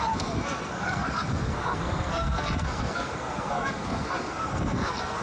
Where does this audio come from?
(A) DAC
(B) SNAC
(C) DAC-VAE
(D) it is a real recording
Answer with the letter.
B